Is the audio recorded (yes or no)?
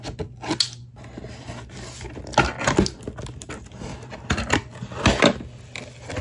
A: yes